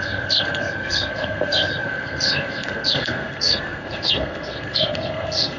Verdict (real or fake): fake